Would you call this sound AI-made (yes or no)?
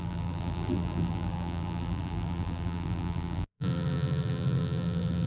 yes